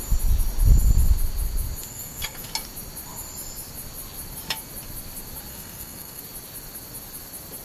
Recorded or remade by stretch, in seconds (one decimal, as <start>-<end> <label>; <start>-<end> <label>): 0.0-1.9 recorded; 1.9-2.5 remade; 2.5-5.5 recorded; 5.5-6.2 remade; 6.2-7.6 recorded